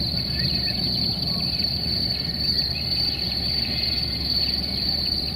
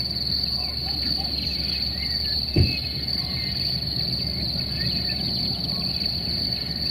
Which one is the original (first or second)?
second